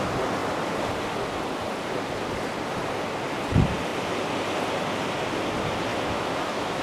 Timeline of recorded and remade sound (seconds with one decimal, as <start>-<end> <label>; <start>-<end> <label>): 0.0-5.9 recorded; 5.9-6.8 remade